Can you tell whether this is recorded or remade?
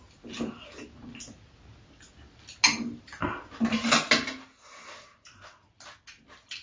recorded